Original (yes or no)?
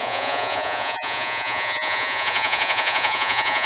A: no